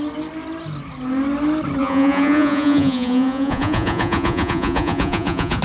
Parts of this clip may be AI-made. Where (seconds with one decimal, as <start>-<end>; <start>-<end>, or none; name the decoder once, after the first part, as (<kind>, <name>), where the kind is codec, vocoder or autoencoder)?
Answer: 1.8-5.6 (vocoder, Vocos)